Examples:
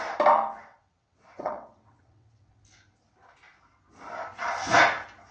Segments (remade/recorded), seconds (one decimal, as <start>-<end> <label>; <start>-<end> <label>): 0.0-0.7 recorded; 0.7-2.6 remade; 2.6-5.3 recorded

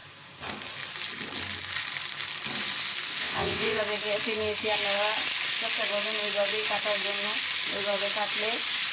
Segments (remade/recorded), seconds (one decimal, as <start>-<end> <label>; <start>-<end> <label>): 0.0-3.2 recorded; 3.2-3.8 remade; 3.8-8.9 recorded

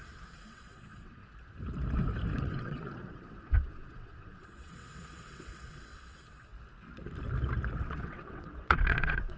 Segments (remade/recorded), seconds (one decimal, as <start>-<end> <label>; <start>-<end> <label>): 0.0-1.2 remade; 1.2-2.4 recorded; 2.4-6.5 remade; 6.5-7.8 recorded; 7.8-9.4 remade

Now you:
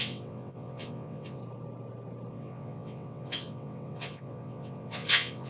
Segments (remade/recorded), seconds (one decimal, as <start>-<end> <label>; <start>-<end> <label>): 0.0-1.4 remade; 1.4-2.3 recorded; 2.3-5.5 remade

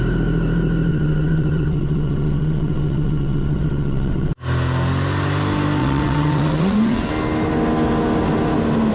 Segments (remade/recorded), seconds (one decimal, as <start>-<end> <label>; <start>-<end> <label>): 0.0-0.9 recorded; 0.9-4.3 remade; 4.3-5.8 recorded; 5.8-7.1 remade; 7.1-8.9 recorded

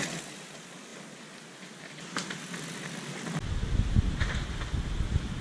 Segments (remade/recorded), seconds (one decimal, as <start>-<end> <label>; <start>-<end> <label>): 0.0-5.4 recorded